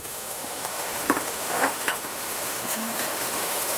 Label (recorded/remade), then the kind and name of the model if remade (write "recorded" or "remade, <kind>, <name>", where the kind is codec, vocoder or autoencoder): remade, autoencoder, DAC-VAE